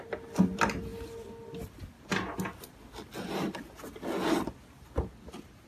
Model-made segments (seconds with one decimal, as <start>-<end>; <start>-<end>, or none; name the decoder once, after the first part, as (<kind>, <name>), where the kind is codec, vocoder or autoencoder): none